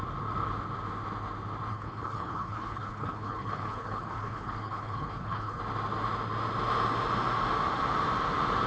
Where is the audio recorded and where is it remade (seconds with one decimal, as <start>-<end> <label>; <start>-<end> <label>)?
0.0-1.7 recorded; 1.7-5.6 remade; 5.6-8.7 recorded